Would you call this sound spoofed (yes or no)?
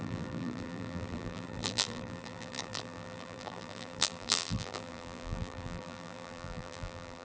yes